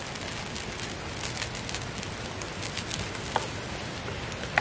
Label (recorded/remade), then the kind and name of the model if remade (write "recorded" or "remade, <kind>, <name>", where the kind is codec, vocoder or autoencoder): recorded